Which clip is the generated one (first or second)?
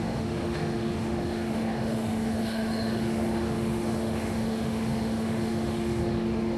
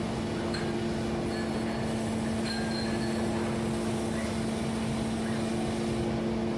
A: first